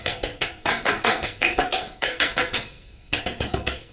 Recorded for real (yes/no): no